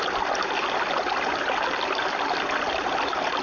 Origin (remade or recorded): recorded